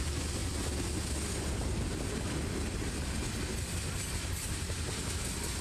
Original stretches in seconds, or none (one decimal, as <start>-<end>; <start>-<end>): 0.0-5.6